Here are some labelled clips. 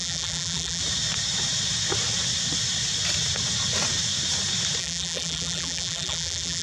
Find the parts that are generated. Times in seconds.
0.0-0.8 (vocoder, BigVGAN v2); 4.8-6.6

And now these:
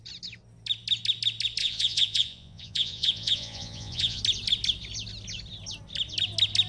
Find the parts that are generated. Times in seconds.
1.6-4.2 (vocoder, Vocos)

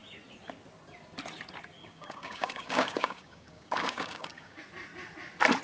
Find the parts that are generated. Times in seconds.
1.8-4.6 (codec, DAC)

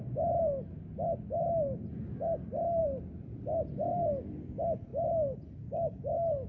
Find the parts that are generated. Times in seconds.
none

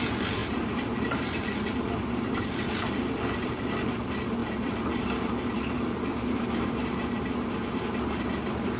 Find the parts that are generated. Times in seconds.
0.0-8.8 (vocoder, BigVGAN v2)

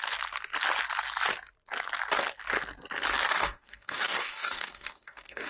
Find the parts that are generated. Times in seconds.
3.3-5.5 (codec, DAC)

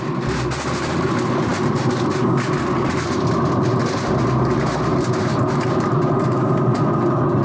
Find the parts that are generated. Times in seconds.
none